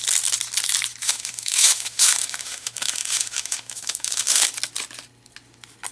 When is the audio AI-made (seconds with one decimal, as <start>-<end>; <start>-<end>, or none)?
1.0-4.5